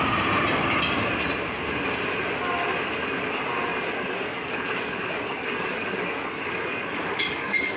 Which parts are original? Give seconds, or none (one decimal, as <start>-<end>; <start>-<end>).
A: 0.0-3.7